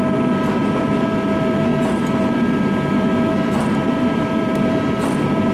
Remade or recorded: remade